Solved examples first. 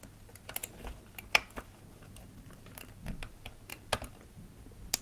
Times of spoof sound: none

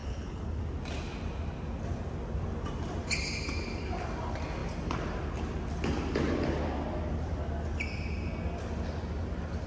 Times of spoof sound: 0.0-0.6 (codec, HILCodec)

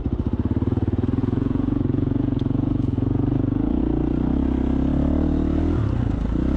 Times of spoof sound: 1.2-3.8 (vocoder, Vocos)

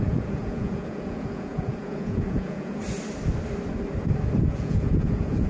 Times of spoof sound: 0.0-2.8 (vocoder, Vocos); 4.4-5.5

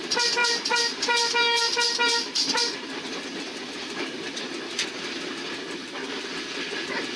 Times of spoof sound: 0.4-4.4 (vocoder, BigVGAN v2)

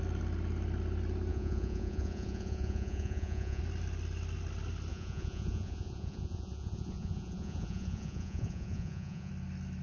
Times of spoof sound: 1.3-3.6 (vocoder, Vocos); 4.9-9.3